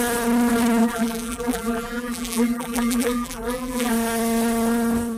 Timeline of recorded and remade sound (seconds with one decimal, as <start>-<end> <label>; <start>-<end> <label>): 0.0-0.8 recorded; 0.8-3.9 remade; 3.9-5.2 recorded